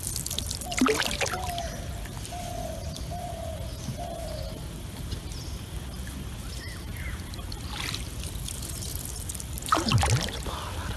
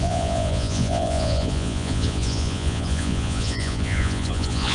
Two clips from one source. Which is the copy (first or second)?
second